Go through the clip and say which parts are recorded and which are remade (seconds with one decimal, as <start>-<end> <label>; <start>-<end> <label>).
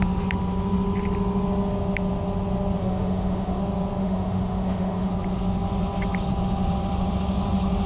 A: 0.0-2.8 recorded; 2.8-3.6 remade; 3.6-4.0 recorded; 4.0-5.1 remade; 5.1-7.9 recorded